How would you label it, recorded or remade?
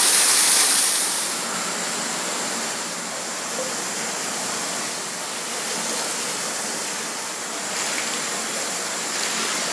recorded